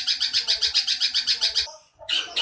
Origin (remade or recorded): remade